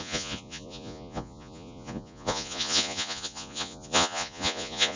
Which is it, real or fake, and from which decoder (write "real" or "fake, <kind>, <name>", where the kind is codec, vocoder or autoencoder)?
fake, vocoder, Vocos